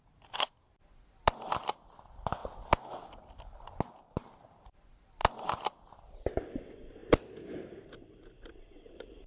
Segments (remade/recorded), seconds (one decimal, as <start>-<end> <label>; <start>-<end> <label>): 0.0-9.3 recorded